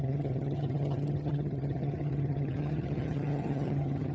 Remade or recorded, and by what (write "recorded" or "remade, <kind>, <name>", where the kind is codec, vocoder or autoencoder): remade, vocoder, HiFi-GAN